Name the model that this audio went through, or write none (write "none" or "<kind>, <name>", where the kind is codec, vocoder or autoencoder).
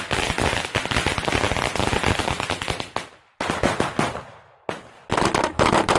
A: none